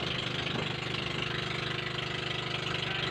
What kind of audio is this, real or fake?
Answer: real